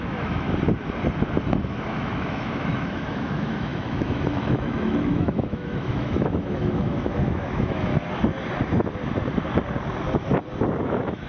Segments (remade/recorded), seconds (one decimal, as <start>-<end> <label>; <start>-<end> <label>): 0.0-0.5 remade; 0.5-1.7 recorded; 1.7-7.9 remade; 7.9-10.8 recorded; 10.8-11.3 remade